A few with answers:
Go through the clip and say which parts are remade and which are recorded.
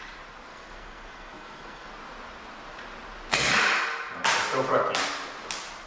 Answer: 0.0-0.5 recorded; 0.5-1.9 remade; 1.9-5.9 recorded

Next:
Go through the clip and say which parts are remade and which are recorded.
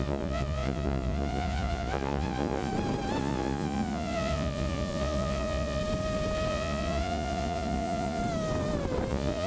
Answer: 0.0-2.7 remade; 2.7-3.2 recorded; 3.2-5.8 remade; 5.8-6.5 recorded; 6.5-8.2 remade; 8.2-9.1 recorded; 9.1-9.5 remade